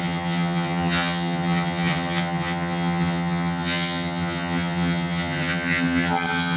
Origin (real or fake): fake